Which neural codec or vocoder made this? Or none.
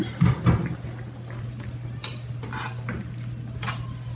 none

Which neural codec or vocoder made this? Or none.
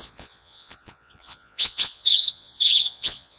vocoder, Vocos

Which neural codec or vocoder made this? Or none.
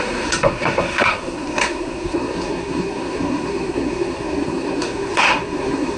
codec, SNAC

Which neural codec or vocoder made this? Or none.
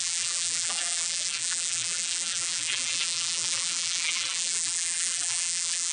vocoder, BigVGAN v2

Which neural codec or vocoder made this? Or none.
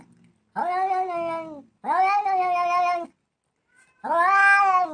none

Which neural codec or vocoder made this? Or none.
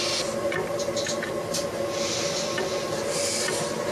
none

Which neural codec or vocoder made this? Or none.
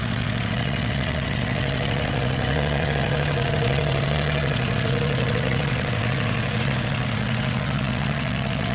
vocoder, WaveNeXt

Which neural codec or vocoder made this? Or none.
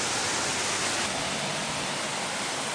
none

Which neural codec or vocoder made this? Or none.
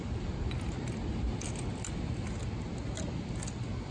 none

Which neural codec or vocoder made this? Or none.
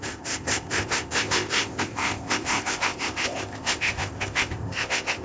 codec, ZipCodec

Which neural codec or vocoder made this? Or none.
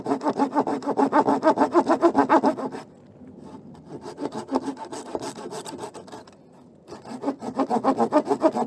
none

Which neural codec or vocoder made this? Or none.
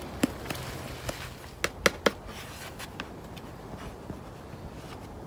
none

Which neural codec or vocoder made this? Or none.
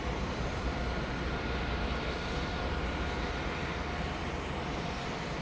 vocoder, BigVGAN v2